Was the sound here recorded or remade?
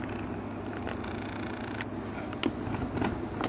recorded